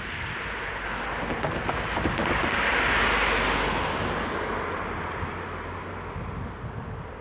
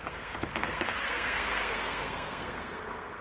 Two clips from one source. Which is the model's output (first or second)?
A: second